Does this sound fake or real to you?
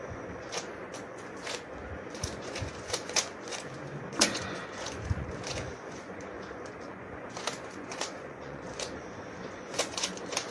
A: fake